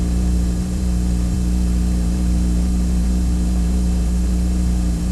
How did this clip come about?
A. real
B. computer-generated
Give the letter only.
B